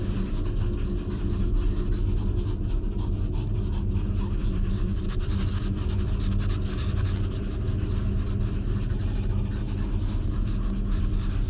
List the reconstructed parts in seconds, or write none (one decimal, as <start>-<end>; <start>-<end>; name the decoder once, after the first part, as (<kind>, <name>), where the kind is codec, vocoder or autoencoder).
4.4-5.2 (vocoder, BigVGAN v2)